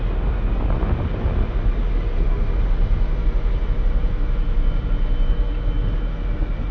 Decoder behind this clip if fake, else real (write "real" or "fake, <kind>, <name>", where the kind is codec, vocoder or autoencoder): real